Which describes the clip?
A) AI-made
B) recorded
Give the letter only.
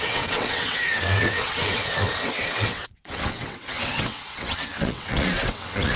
A